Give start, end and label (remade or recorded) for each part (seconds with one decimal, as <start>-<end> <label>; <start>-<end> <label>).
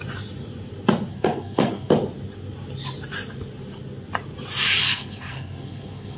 0.0-1.1 recorded; 1.1-1.9 remade; 1.9-4.8 recorded; 4.8-6.2 remade